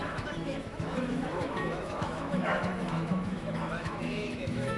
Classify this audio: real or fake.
fake